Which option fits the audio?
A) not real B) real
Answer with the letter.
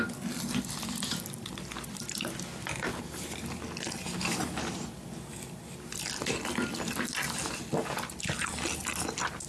B